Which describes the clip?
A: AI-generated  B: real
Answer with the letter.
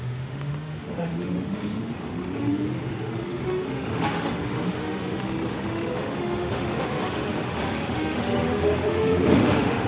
A